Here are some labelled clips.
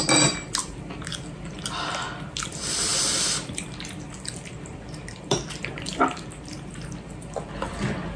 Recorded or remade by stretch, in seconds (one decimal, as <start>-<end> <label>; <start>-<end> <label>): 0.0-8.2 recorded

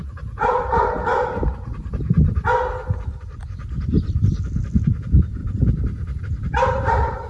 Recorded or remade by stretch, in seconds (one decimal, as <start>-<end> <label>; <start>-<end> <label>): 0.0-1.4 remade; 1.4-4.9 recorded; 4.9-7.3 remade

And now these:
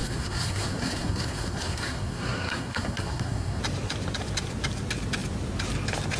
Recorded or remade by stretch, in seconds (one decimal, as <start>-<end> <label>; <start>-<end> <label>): 0.0-3.6 remade; 3.6-6.2 recorded

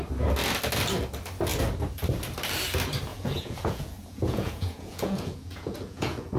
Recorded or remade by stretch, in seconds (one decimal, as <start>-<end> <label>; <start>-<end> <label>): 0.0-3.1 recorded; 3.1-6.4 remade

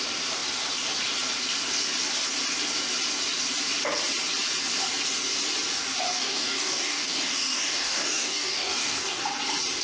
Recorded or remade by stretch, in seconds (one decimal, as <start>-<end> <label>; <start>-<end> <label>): 0.0-6.1 recorded; 6.1-9.2 remade; 9.2-9.8 recorded

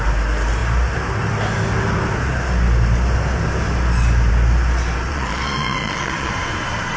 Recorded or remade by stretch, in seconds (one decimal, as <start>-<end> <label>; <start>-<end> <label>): 0.0-5.1 recorded; 5.1-6.3 remade; 6.3-7.0 recorded

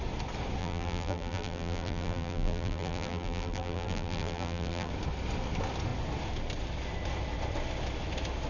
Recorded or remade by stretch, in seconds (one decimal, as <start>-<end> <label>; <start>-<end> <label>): 0.0-0.6 recorded; 0.6-4.9 remade; 4.9-8.5 recorded

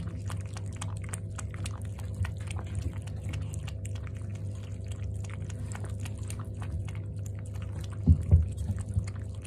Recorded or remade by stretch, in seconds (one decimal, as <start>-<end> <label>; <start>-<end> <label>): 0.0-9.5 recorded